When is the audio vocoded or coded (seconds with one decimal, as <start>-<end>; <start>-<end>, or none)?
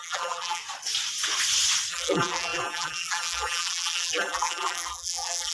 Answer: 0.0-0.6; 1.9-5.5